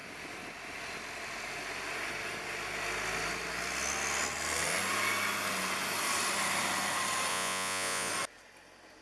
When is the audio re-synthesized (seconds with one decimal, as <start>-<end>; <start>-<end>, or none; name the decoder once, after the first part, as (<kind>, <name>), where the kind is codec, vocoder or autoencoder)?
7.3-8.1 (vocoder, Vocos)